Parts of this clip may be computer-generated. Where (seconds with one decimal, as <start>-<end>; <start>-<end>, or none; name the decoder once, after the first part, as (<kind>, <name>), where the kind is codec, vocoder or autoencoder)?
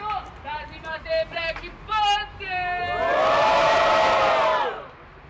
0.9-2.8 (vocoder, BigVGAN v2); 3.4-4.2